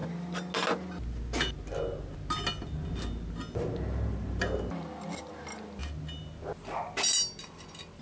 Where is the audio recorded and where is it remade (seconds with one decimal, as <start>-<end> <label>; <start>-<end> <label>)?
0.0-8.0 recorded

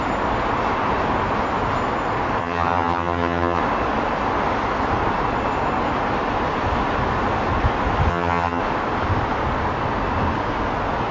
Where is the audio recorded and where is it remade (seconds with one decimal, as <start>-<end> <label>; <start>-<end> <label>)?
0.0-2.4 recorded; 2.4-3.6 remade; 3.6-8.1 recorded; 8.1-8.6 remade; 8.6-11.1 recorded

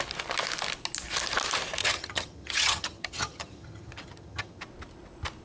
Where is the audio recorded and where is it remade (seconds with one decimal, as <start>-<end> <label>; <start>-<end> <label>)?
0.0-1.8 recorded; 1.8-4.6 remade; 4.6-5.4 recorded

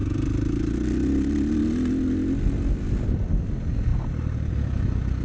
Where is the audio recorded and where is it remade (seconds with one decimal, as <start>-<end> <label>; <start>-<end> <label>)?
0.0-5.2 recorded